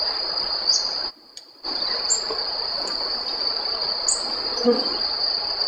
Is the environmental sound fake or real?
real